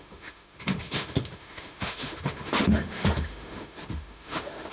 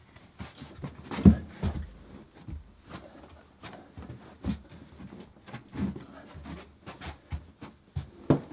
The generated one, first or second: first